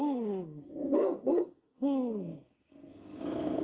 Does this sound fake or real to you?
fake